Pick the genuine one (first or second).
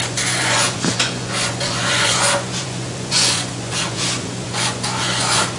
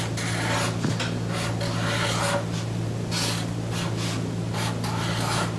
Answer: second